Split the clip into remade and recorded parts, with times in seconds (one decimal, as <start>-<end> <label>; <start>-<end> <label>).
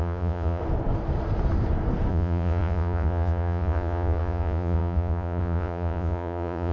0.0-0.6 remade; 0.6-2.1 recorded; 2.1-6.7 remade